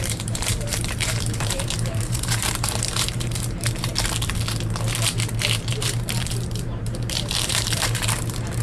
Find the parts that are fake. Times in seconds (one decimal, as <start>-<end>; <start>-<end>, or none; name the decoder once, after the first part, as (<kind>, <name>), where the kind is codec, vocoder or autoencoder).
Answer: 0.0-3.9 (vocoder, BigVGAN v2); 5.7-8.6